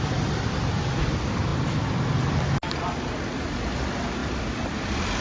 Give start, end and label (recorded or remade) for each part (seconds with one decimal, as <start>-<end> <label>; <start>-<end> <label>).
0.0-4.2 recorded; 4.2-5.2 remade